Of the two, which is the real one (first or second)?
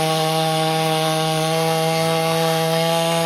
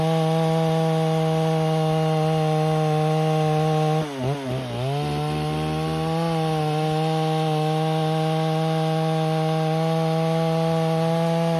second